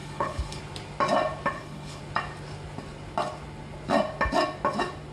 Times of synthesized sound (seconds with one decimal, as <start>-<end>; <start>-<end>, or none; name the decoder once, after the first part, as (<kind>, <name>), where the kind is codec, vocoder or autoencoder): 0.0-0.6 (codec, HILCodec); 1.5-2.0